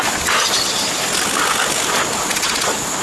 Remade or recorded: recorded